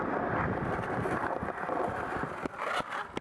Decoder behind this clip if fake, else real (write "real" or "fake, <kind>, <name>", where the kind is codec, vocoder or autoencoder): real